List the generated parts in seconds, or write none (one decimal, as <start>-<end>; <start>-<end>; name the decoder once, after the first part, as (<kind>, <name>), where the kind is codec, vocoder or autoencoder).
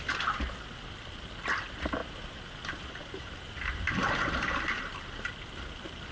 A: 2.0-4.8 (vocoder, BigVGAN v2)